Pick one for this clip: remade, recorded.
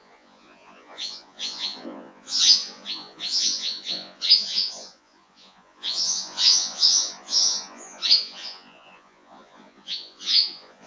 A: remade